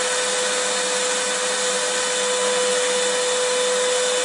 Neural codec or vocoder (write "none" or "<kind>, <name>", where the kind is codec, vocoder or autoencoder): none